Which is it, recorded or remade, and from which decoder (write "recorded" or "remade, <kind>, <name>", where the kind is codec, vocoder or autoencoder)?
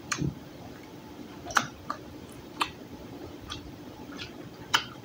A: remade, vocoder, BigVGAN v2